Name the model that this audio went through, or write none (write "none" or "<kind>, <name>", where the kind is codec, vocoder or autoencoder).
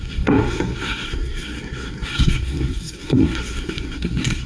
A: codec, SNAC